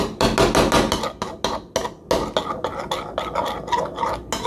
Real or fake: real